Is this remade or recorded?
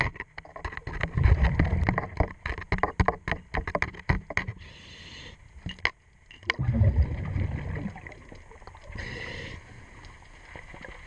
recorded